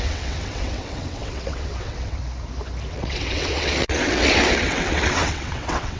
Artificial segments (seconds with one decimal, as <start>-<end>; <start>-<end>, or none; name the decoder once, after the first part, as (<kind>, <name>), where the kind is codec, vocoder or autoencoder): 0.0-2.2 (vocoder, WaveNeXt); 2.9-6.0